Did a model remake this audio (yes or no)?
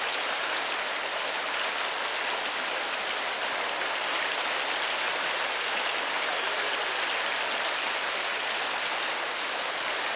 no